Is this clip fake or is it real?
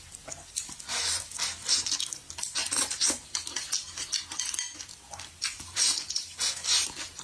real